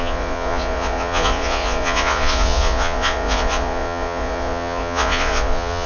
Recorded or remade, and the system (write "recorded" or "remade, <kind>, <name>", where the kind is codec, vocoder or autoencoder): remade, vocoder, Vocos